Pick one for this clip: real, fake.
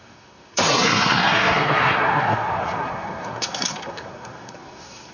fake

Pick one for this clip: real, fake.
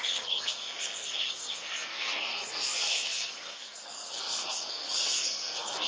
fake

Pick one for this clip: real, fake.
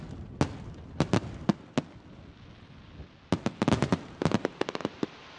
real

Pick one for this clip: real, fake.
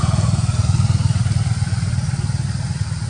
real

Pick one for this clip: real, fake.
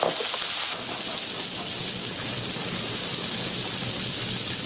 real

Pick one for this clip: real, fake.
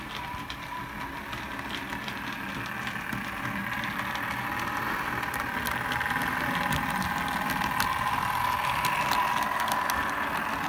real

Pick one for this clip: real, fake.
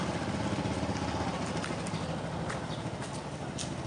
real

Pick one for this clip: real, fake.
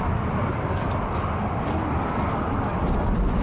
real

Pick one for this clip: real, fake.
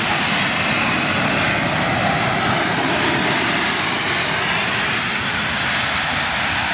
real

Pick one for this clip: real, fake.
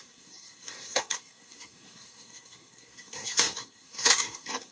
fake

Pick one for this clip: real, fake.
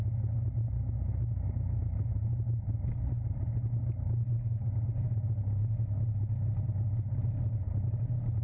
real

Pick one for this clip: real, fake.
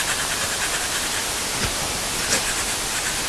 real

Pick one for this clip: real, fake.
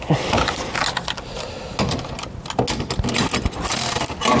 real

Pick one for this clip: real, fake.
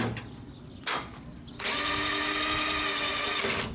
real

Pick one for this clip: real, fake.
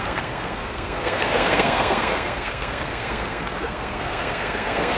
fake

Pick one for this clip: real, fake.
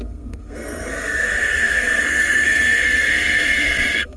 fake